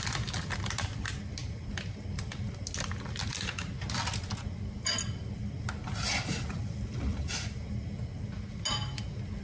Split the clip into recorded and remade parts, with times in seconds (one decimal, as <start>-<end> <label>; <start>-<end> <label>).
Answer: 0.0-9.4 recorded